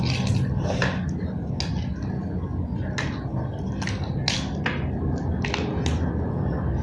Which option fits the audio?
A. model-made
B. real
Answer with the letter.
B